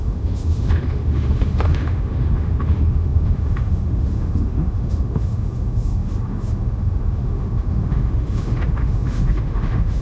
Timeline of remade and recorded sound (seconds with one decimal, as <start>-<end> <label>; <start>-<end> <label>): 0.0-10.0 remade